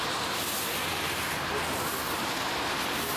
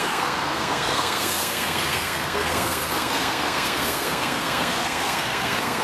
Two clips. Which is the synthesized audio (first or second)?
second